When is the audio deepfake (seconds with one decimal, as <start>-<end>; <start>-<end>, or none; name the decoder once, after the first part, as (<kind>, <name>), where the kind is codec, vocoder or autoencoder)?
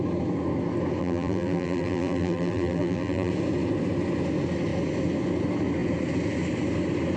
1.0-3.3 (vocoder, BigVGAN v2)